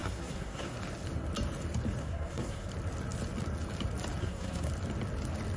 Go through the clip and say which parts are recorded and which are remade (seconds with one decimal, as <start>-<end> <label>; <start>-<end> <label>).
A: 0.0-0.8 remade; 0.8-2.0 recorded; 2.0-2.7 remade; 2.7-4.2 recorded; 4.2-4.7 remade; 4.7-5.6 recorded